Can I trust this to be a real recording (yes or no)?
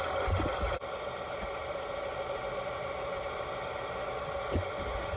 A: yes